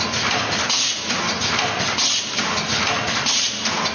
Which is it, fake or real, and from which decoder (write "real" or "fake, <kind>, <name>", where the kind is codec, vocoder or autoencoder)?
real